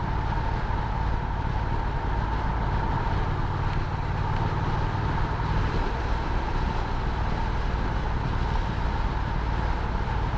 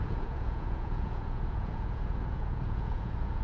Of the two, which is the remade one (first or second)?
second